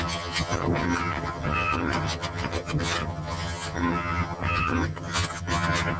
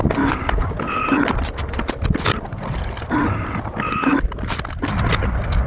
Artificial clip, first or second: first